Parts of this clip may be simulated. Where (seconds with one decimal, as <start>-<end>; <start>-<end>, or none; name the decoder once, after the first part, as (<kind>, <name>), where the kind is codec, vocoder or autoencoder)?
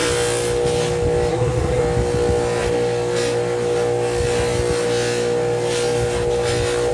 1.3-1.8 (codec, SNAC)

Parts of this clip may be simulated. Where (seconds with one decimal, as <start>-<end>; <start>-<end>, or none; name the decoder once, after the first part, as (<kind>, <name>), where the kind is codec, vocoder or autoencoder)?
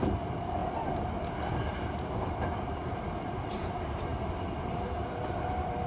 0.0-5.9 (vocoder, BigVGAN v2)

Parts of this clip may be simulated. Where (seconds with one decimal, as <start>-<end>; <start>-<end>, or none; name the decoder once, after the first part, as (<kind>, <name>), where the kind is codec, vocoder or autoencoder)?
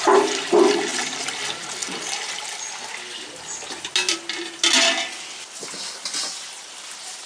none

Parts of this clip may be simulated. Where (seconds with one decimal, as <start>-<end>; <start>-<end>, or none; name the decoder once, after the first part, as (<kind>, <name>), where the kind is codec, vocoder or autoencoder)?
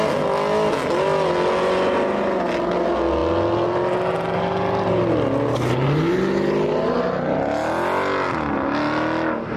none